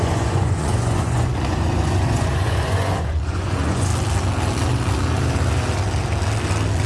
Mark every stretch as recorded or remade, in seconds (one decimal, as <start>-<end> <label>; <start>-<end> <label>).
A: 0.0-3.9 remade; 3.9-6.9 recorded